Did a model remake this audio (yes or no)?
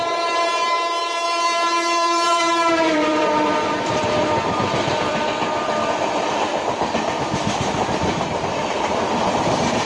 yes